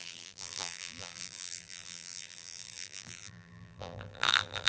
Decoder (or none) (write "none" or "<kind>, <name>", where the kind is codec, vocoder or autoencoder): vocoder, BigVGAN v2